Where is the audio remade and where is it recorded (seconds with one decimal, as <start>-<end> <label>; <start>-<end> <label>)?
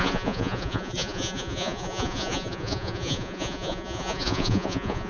0.0-5.1 remade